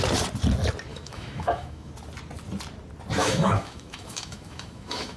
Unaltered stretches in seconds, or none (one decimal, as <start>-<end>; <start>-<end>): 0.0-0.9; 1.9-3.2